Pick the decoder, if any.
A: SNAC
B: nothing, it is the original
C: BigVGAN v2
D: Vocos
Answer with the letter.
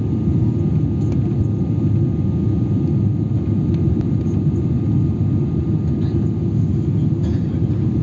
B